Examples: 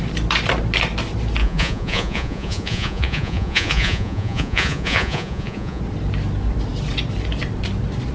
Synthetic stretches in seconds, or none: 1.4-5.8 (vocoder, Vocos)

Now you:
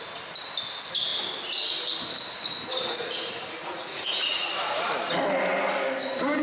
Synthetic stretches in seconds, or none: 3.6-4.5 (vocoder, Vocos)

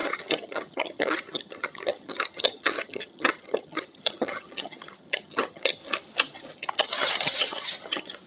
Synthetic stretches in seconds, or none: 0.0-5.8 (vocoder, HiFi-GAN); 6.5-8.3

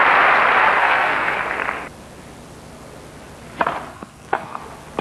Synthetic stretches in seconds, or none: 0.8-1.4 (codec, SNAC); 3.9-4.6

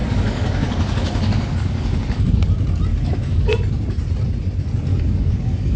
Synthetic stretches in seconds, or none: 0.0-2.5 (codec, DAC); 2.9-3.5; 4.9-5.8

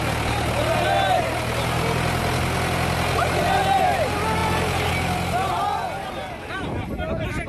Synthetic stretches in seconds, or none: none

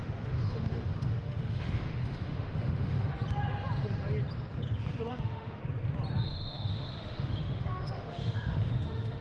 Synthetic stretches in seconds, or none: 0.0-3.1 (autoencoder, DAC-VAE); 5.1-5.6; 6.3-9.2